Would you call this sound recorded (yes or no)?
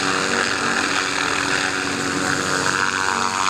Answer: yes